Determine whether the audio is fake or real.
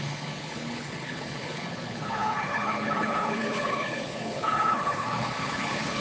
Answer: fake